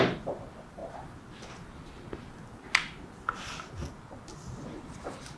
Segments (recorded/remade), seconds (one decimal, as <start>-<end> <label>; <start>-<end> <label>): 0.0-5.4 recorded